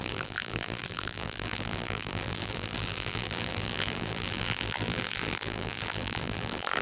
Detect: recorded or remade remade